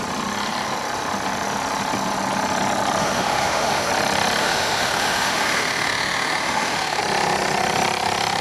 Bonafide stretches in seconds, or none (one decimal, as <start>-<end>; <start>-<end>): 0.0-3.0; 3.9-4.4; 7.0-8.4